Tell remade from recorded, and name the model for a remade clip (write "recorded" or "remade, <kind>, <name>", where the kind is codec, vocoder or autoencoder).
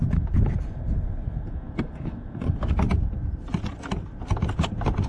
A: recorded